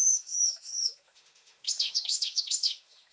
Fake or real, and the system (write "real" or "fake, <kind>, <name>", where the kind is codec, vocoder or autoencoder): fake, autoencoder, DAC-VAE